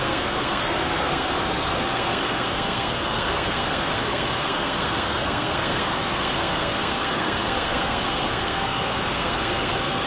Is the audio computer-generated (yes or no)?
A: yes